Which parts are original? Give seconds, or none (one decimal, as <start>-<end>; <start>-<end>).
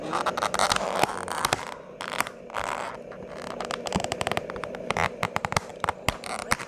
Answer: 0.0-3.9; 5.7-6.7